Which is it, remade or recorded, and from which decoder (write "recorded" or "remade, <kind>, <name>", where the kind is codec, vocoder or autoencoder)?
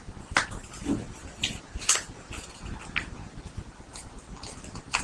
recorded